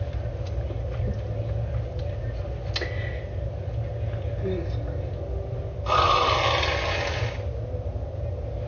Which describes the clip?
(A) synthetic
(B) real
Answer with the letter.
B